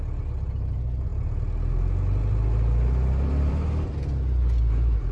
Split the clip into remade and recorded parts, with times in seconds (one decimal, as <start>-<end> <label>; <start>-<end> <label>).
0.0-5.1 recorded